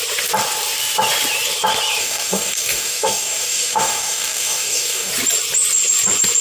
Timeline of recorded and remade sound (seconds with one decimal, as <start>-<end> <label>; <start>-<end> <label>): 0.0-2.0 recorded; 2.0-5.1 remade; 5.1-6.4 recorded